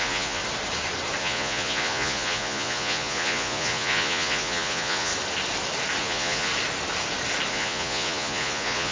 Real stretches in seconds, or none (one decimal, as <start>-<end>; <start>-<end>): 0.4-1.2; 5.1-6.0; 6.5-7.5